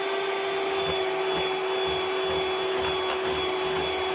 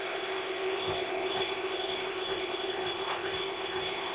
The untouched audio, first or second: first